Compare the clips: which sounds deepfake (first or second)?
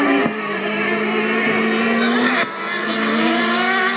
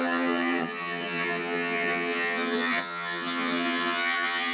second